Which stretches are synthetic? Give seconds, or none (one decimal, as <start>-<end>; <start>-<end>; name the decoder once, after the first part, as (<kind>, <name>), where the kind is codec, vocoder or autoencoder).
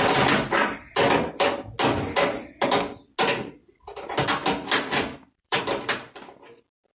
3.7-6.3 (vocoder, BigVGAN v2)